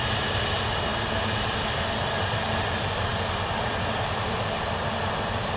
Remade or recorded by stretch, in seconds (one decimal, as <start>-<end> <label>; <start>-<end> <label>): 0.0-5.6 recorded